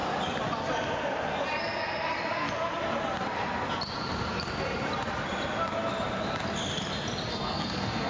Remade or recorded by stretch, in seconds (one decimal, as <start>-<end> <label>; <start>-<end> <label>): 0.0-7.3 recorded; 7.3-8.1 remade